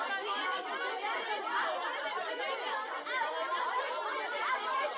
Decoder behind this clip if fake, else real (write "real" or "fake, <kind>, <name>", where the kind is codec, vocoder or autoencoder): real